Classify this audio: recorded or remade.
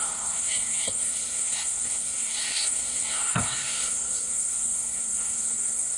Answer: remade